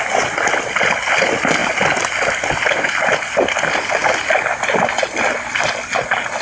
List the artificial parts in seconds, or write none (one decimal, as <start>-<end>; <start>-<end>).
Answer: none